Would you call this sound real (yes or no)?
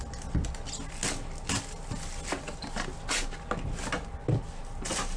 yes